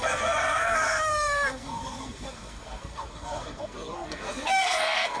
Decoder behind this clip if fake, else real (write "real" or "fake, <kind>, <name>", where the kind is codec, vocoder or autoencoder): fake, codec, SNAC